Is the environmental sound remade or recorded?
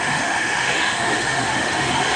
remade